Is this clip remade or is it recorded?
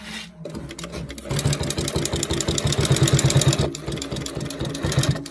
recorded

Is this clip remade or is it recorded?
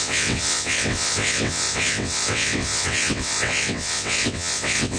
remade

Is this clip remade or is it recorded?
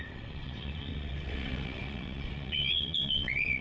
remade